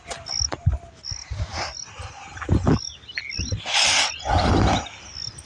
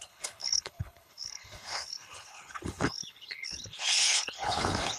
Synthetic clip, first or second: second